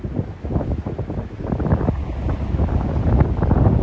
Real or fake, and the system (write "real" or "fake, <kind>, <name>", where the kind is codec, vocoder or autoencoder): real